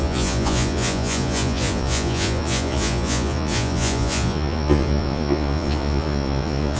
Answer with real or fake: fake